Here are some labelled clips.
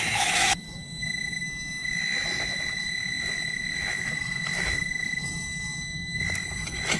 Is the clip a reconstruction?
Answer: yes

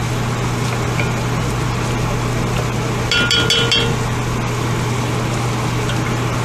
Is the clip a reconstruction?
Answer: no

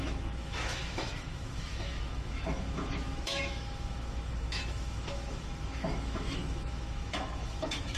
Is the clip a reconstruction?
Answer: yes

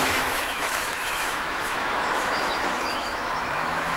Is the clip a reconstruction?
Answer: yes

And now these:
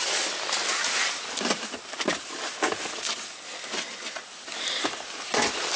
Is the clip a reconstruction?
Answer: no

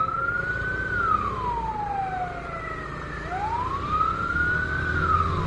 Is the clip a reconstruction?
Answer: no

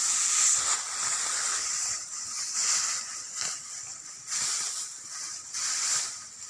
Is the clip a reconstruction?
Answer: no